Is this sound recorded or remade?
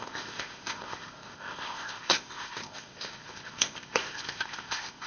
remade